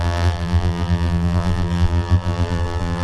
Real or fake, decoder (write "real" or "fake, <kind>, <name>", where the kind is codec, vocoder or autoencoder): fake, vocoder, BigVGAN v2